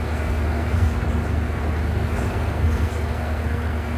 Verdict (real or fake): fake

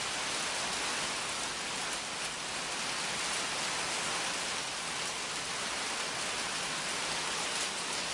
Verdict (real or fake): real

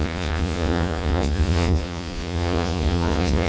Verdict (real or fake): fake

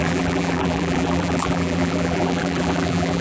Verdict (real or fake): fake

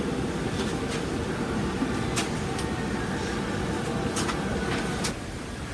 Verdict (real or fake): real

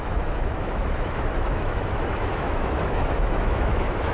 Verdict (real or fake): fake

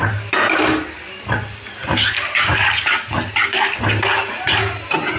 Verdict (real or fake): real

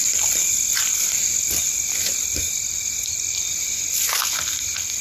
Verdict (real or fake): fake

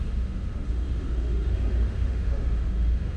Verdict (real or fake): fake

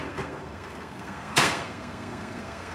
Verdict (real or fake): fake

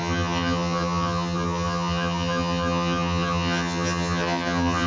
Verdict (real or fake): fake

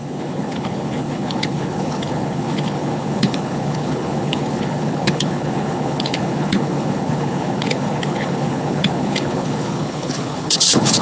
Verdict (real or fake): fake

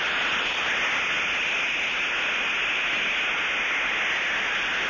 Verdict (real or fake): real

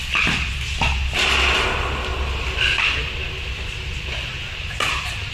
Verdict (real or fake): real